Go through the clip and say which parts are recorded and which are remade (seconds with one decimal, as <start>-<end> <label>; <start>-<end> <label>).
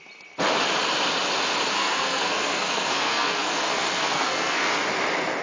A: 0.0-1.7 recorded; 1.7-4.7 remade; 4.7-5.4 recorded